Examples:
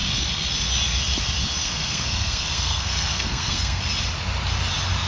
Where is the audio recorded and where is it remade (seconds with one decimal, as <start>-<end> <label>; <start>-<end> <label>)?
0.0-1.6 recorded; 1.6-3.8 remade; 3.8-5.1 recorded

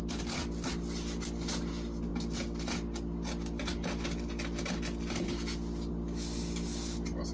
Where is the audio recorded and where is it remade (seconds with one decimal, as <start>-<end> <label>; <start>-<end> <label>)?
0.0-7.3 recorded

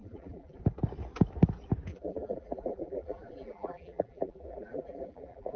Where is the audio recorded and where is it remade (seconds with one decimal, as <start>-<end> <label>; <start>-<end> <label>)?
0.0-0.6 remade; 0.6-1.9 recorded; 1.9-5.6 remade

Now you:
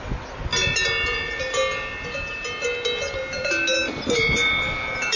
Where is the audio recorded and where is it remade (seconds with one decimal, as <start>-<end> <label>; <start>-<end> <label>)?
0.0-5.2 recorded